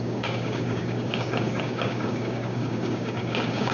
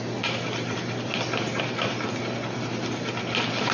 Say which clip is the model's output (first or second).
first